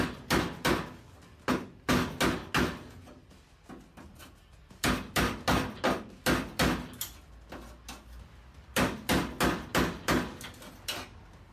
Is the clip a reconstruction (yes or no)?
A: no